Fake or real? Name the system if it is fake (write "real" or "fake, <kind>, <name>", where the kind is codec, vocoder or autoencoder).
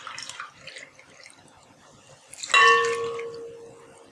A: real